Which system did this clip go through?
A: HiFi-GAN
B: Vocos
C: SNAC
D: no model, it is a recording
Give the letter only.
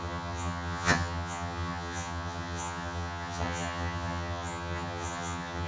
A